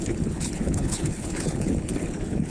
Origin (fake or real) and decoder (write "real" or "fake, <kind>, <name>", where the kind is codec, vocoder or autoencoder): fake, codec, HILCodec